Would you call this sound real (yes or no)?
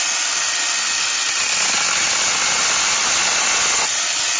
yes